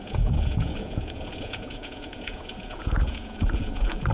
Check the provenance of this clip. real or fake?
fake